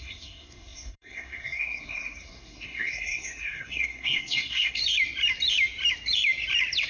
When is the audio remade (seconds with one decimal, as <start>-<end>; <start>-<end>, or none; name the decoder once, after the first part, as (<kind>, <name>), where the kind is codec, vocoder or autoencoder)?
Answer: 0.0-4.8 (codec, SNAC)